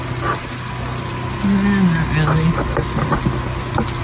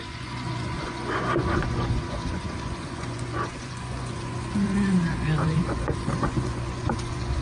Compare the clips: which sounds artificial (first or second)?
second